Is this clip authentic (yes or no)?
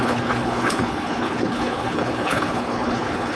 no